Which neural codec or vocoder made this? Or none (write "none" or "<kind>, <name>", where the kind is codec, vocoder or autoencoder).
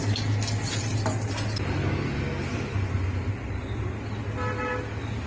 none